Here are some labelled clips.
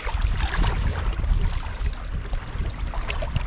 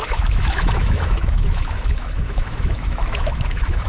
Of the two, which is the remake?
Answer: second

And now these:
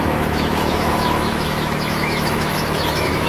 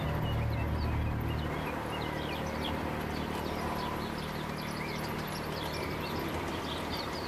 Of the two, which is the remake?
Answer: first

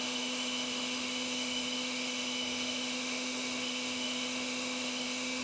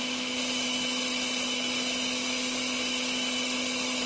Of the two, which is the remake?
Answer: first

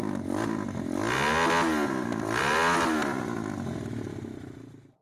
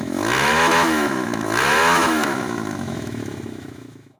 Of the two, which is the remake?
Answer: second